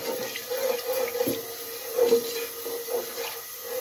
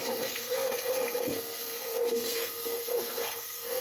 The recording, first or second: first